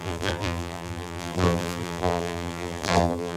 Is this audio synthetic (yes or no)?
yes